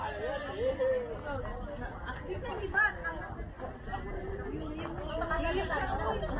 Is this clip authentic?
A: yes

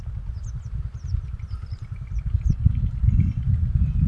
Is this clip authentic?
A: yes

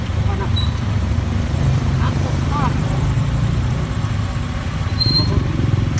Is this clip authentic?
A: no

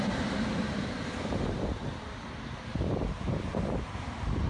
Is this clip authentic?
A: no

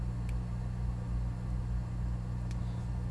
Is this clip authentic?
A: yes